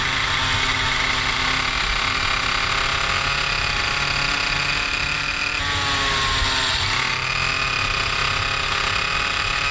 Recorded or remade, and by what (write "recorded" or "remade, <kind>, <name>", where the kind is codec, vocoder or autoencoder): recorded